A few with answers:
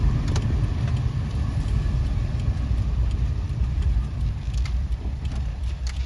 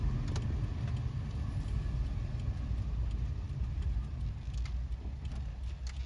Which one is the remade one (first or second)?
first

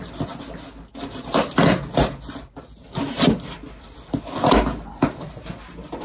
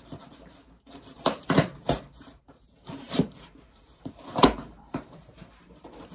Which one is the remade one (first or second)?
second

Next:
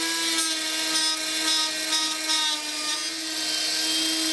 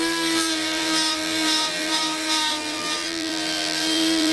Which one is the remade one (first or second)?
second